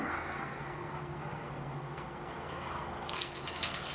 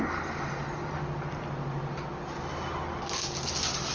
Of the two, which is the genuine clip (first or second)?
second